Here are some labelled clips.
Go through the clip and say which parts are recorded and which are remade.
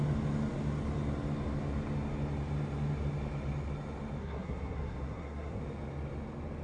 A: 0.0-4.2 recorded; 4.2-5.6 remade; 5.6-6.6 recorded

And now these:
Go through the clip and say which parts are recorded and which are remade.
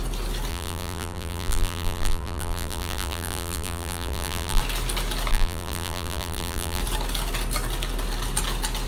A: 0.0-0.5 recorded; 0.5-4.6 remade; 4.6-5.3 recorded; 5.3-6.8 remade; 6.8-8.9 recorded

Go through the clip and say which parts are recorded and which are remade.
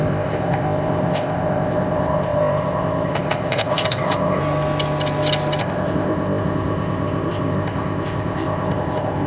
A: 0.0-4.4 remade; 4.4-5.6 recorded; 5.6-9.3 remade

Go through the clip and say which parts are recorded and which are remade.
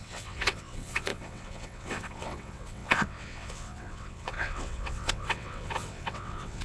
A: 0.0-6.6 remade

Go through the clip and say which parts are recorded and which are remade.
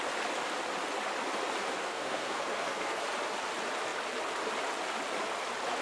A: 0.0-1.8 recorded; 1.8-3.0 remade; 3.0-5.8 recorded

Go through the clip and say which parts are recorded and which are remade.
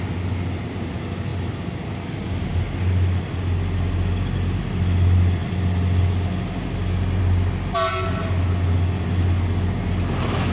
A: 0.0-10.5 recorded